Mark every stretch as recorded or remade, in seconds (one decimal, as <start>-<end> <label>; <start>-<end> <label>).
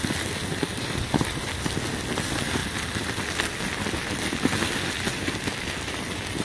0.0-6.4 recorded